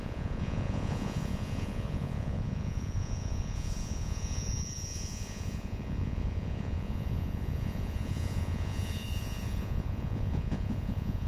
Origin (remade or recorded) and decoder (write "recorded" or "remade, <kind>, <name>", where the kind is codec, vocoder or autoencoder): remade, vocoder, Vocos